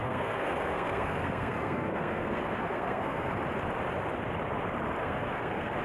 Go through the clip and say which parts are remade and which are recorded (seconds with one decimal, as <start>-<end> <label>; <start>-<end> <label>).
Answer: 0.0-3.3 remade; 3.3-5.0 recorded; 5.0-5.8 remade